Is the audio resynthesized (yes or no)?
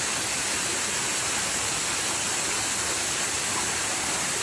no